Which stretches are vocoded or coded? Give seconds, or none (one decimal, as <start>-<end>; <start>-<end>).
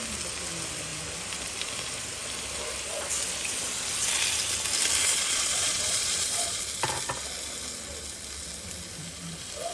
5.0-6.6